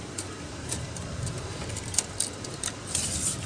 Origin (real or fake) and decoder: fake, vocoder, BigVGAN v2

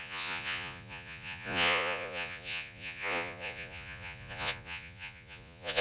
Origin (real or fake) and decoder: fake, vocoder, Vocos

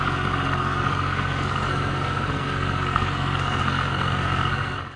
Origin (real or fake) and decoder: fake, codec, SNAC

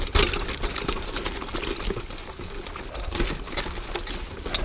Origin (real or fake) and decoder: real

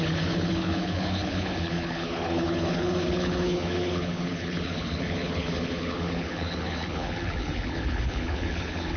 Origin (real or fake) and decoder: fake, codec, HILCodec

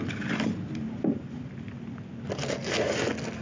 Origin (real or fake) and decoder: real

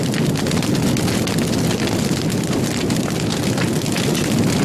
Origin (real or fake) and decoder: real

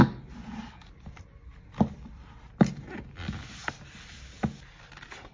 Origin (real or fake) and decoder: real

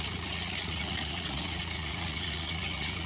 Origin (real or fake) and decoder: fake, vocoder, Vocos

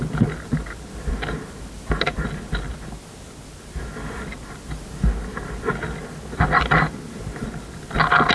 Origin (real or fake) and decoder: real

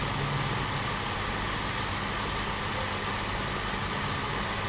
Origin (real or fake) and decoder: real